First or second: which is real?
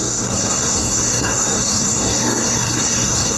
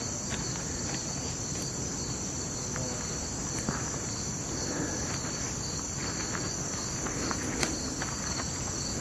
second